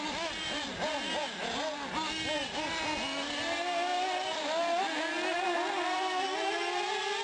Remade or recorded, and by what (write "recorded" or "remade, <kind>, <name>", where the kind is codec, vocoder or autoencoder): recorded